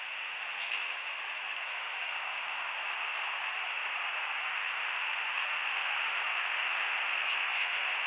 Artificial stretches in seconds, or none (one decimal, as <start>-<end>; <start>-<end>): 0.0-3.8; 4.4-8.1